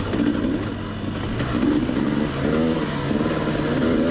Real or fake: real